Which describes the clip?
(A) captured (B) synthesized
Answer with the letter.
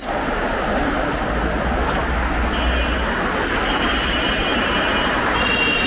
A